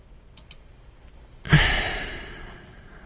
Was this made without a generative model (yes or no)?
yes